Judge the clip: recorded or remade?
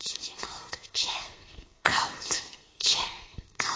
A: remade